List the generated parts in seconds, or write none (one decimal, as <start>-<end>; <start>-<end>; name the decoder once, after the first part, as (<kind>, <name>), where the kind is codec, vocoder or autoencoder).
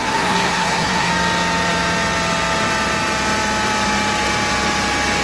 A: 0.0-1.1 (codec, SNAC)